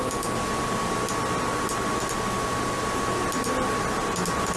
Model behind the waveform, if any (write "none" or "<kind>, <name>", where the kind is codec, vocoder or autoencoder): none